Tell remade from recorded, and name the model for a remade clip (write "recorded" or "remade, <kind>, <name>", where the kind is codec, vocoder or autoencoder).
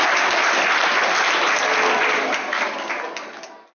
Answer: recorded